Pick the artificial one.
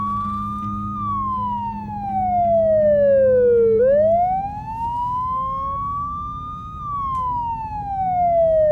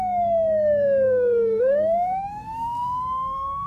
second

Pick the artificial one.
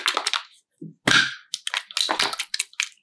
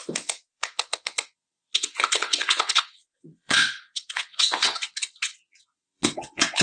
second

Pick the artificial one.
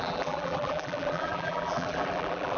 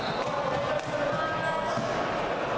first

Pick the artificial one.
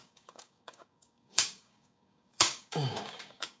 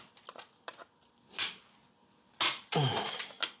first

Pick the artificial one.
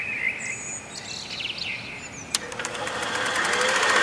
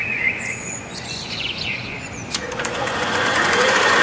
second